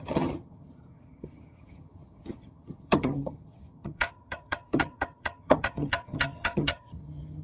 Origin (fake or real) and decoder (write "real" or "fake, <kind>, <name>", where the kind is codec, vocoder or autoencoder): fake, vocoder, HiFi-GAN